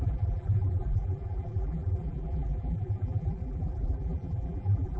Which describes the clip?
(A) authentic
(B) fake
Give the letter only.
B